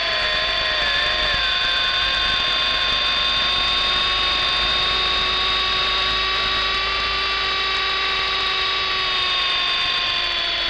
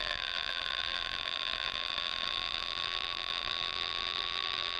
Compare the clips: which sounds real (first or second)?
first